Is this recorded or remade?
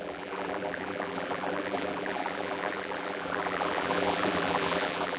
remade